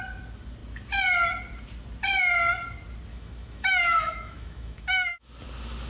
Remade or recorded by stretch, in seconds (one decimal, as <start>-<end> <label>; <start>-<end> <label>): 0.0-3.1 recorded; 3.1-5.3 remade; 5.3-5.9 recorded